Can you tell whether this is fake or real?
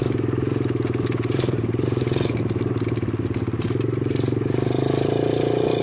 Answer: real